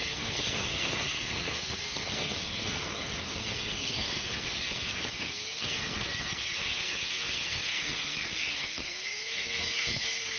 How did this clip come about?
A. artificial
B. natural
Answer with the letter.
A